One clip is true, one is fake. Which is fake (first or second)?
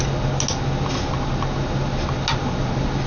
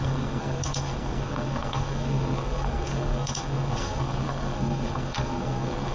second